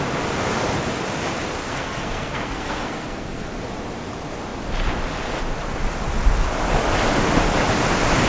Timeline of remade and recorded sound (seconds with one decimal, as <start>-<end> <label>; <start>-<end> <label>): 0.0-1.6 recorded; 1.6-3.5 remade; 3.5-8.3 recorded

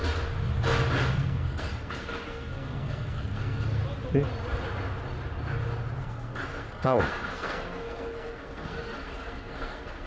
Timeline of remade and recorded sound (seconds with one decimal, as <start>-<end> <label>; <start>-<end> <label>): 0.0-1.1 recorded; 1.1-3.8 remade; 3.8-6.0 recorded; 6.0-10.1 remade